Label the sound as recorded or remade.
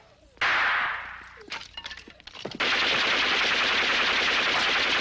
recorded